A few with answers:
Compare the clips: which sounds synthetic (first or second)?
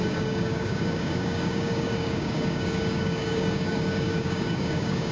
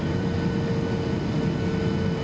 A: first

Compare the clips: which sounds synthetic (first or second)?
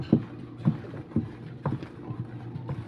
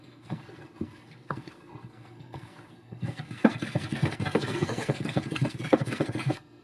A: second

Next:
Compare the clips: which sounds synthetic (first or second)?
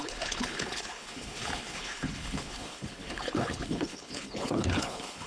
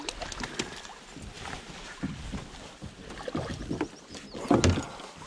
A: first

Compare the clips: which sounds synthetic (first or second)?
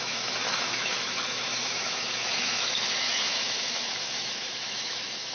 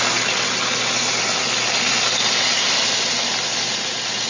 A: first